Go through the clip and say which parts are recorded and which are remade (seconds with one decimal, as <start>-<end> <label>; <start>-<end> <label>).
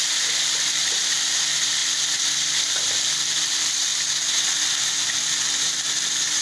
0.0-1.8 remade; 1.8-2.7 recorded; 2.7-3.9 remade; 3.9-5.0 recorded; 5.0-6.4 remade